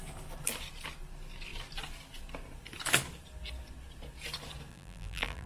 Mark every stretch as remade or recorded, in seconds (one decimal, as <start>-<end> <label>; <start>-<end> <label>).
0.0-4.7 recorded; 4.7-5.5 remade